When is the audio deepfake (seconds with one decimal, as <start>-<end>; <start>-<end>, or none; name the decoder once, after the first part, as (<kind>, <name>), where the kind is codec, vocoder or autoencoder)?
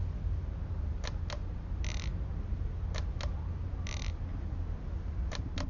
none